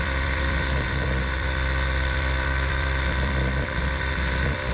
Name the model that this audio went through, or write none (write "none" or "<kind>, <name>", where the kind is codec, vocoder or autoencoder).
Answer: vocoder, BigVGAN v2